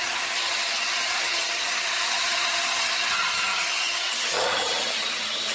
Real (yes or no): no